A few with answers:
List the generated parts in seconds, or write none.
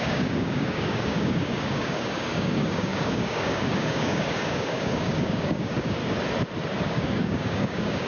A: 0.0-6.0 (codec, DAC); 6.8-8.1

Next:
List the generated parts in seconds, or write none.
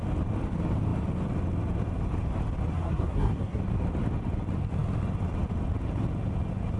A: 2.7-3.6 (codec, SNAC)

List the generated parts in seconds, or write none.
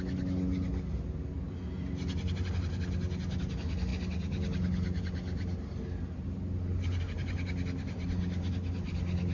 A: none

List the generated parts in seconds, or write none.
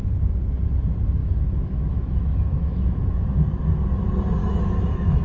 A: 1.2-3.2 (autoencoder, DAC-VAE); 4.4-5.2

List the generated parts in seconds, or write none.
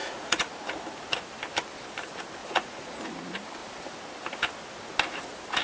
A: 0.0-0.5 (vocoder, Vocos); 2.4-3.0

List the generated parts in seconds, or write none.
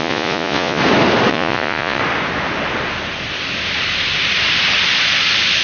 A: 0.0-0.8 (vocoder, Vocos); 1.3-2.0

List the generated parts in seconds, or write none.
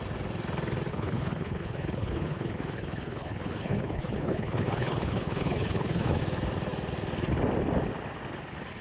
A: 0.9-6.2 (codec, HILCodec)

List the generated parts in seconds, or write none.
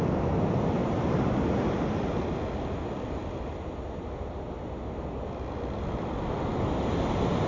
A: none